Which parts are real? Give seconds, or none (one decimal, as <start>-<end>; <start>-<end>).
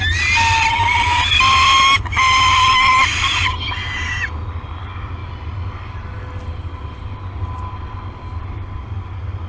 0.0-2.9; 3.4-5.2; 5.9-9.5